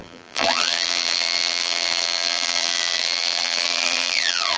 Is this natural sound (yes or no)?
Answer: no